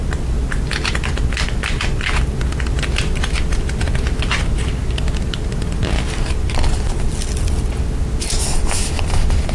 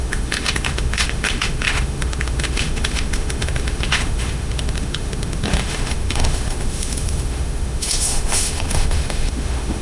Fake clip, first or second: second